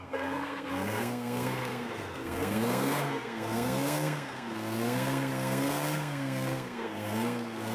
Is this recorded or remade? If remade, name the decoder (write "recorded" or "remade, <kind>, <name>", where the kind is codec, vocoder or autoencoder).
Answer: remade, codec, SNAC